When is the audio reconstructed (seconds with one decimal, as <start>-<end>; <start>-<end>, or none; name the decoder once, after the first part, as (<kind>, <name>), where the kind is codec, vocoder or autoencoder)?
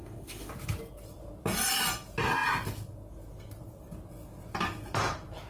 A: 0.0-0.5 (autoencoder, DAC-VAE)